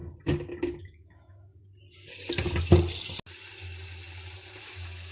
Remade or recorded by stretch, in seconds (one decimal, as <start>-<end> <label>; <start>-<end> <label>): 0.0-0.8 recorded; 0.8-1.5 remade; 1.5-4.6 recorded; 4.6-5.1 remade